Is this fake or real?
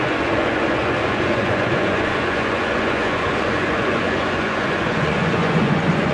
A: fake